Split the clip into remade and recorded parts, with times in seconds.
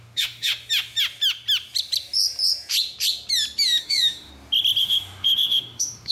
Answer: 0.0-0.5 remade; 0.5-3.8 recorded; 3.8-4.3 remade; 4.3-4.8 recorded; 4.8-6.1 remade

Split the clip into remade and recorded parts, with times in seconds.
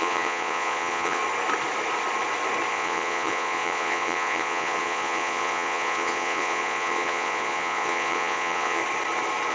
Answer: 0.0-1.2 remade; 1.2-2.7 recorded; 2.7-8.8 remade; 8.8-9.5 recorded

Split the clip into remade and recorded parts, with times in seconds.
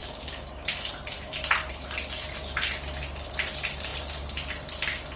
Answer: 0.0-5.2 recorded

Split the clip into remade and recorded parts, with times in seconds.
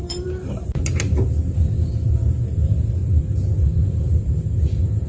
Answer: 0.0-0.8 remade; 0.8-3.0 recorded; 3.0-5.1 remade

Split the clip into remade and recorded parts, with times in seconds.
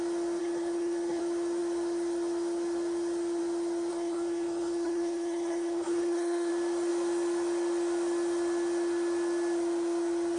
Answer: 0.0-0.4 recorded; 0.4-1.2 remade; 1.2-3.9 recorded; 3.9-6.5 remade; 6.5-10.4 recorded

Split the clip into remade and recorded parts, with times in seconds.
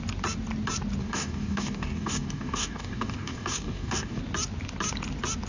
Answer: 0.0-1.0 recorded; 1.0-4.2 remade; 4.2-5.5 recorded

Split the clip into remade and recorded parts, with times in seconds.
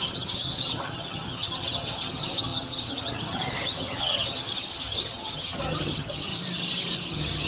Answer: 0.0-6.3 remade; 6.3-7.1 recorded; 7.1-7.5 remade